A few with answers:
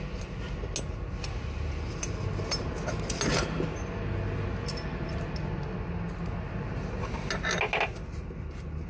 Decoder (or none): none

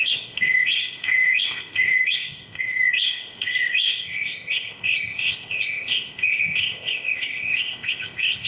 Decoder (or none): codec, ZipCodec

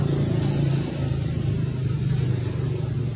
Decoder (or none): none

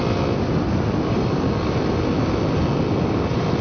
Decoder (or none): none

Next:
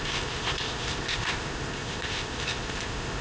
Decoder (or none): codec, ZipCodec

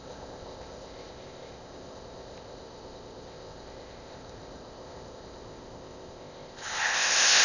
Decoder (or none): codec, ZipCodec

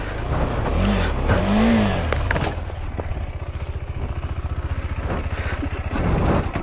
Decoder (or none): none